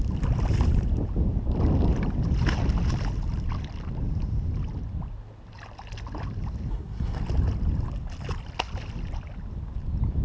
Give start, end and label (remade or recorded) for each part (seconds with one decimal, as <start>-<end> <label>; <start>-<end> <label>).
0.0-6.7 recorded; 6.7-7.2 remade; 7.2-10.2 recorded

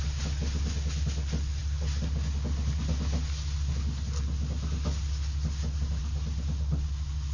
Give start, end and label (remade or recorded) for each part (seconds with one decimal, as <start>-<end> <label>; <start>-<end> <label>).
0.0-7.3 recorded

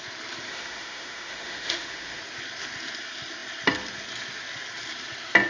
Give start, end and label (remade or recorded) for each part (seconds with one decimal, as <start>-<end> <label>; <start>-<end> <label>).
0.0-0.5 recorded; 0.5-2.2 remade; 2.2-5.5 recorded

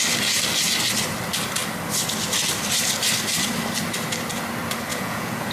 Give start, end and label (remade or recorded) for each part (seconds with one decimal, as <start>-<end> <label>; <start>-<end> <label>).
0.0-4.9 recorded; 4.9-5.5 remade

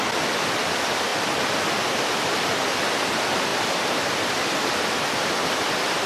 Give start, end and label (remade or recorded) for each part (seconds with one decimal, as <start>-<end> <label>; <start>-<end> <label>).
0.0-6.1 recorded

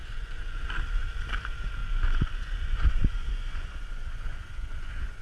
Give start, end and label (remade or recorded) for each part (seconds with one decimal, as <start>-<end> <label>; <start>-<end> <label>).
0.0-0.6 remade; 0.6-1.8 recorded; 1.8-5.2 remade

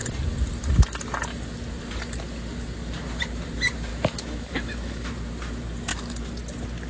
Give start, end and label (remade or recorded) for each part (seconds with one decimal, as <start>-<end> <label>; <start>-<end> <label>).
0.0-3.9 recorded; 3.9-5.1 remade; 5.1-6.9 recorded

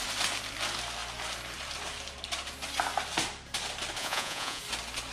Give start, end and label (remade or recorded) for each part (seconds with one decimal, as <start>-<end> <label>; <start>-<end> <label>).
0.0-4.0 recorded; 4.0-4.6 remade; 4.6-5.1 recorded